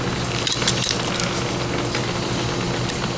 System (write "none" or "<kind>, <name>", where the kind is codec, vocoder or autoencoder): none